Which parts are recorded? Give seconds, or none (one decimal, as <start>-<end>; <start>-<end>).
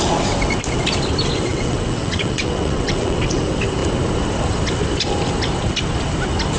0.0-1.5; 3.4-6.6